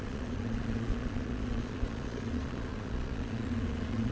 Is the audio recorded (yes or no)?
no